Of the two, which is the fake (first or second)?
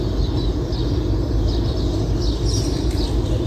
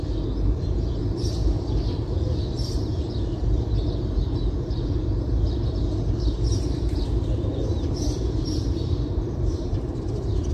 second